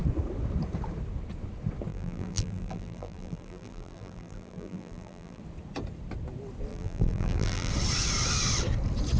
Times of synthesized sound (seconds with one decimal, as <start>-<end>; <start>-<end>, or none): 1.9-5.4; 6.7-7.7